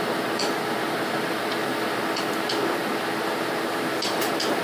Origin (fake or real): real